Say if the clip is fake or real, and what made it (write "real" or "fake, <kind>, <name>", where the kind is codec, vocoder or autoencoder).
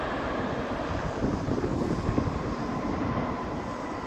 real